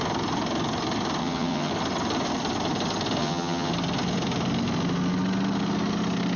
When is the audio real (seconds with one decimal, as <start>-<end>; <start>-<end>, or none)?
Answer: 0.0-1.2; 1.7-3.2; 3.7-6.4